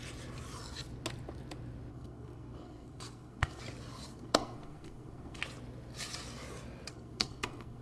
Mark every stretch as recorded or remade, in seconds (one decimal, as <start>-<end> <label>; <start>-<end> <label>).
0.0-1.9 recorded; 1.9-3.6 remade; 3.6-4.1 recorded; 4.1-5.4 remade; 5.4-6.9 recorded; 6.9-7.8 remade